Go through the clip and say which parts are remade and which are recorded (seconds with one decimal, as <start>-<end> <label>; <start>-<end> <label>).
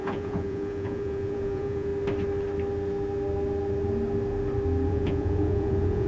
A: 0.0-1.9 remade; 1.9-4.9 recorded; 4.9-6.1 remade